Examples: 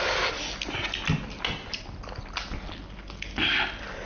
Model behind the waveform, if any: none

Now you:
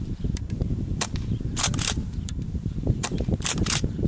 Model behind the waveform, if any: vocoder, BigVGAN v2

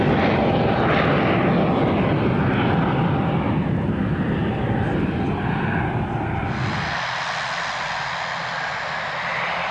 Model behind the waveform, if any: none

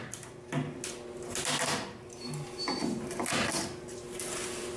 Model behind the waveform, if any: none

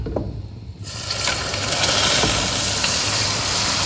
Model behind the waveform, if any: none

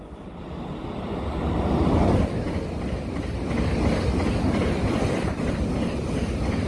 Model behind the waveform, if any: none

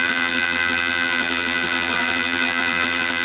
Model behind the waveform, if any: vocoder, BigVGAN v2